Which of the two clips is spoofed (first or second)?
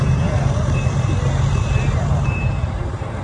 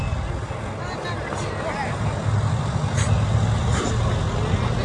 first